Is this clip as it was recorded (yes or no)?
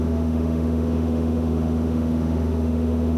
no